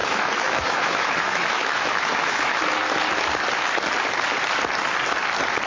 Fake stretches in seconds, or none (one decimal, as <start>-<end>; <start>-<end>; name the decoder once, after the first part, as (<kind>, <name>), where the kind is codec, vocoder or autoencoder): 0.0-2.6 (autoencoder, DAC-VAE)